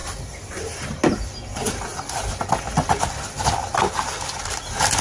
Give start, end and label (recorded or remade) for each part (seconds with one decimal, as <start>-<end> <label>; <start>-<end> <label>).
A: 0.0-1.0 remade; 1.0-5.0 recorded